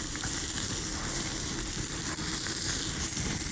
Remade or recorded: recorded